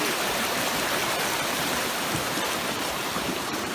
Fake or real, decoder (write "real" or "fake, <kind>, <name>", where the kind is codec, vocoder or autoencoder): fake, vocoder, BigVGAN v2